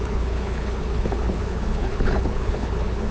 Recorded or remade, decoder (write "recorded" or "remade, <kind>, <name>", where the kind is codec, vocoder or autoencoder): remade, codec, HILCodec